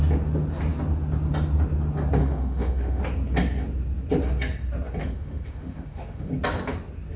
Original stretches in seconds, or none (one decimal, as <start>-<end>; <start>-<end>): 0.0-2.2; 3.0-5.0; 6.3-7.2